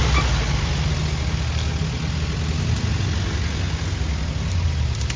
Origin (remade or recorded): recorded